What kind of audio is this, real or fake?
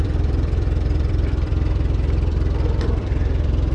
fake